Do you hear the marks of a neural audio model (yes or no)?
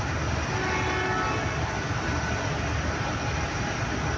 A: no